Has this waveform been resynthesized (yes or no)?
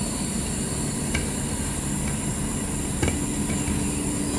no